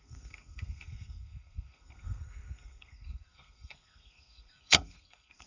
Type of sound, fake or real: fake